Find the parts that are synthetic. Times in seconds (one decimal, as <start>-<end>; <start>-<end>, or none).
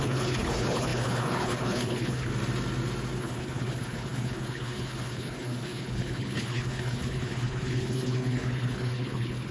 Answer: 0.0-2.3; 3.2-9.5